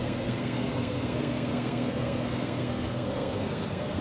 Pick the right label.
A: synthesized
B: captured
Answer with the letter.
A